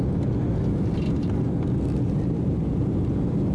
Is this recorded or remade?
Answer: recorded